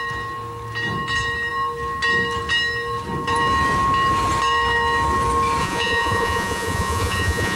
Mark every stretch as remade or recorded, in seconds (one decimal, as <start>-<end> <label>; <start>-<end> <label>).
0.0-5.6 recorded; 5.6-7.6 remade